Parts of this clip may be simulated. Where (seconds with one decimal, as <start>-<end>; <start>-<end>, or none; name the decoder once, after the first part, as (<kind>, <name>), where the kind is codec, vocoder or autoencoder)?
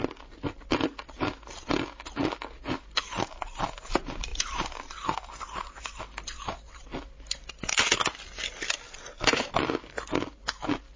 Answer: 4.3-6.0 (vocoder, BigVGAN v2)